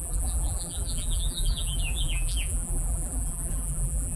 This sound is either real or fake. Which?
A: fake